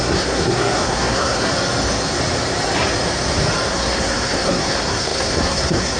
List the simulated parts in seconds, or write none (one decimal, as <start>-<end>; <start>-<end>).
0.0-1.5; 3.7-6.0

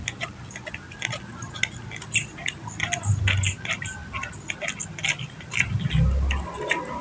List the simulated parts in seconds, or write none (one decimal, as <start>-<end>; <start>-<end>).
0.0-0.7; 2.4-3.2

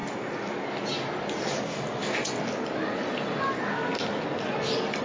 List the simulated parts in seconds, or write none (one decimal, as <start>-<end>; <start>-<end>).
none

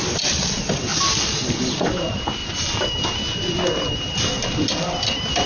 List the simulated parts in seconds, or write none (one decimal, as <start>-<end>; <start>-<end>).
0.0-0.9; 1.4-2.4